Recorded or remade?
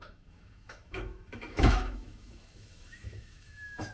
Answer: remade